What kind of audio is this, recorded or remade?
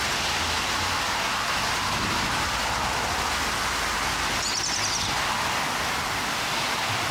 recorded